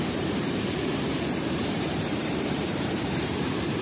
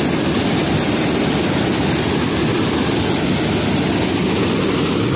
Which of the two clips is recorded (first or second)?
second